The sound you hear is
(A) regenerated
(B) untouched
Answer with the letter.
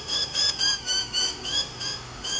A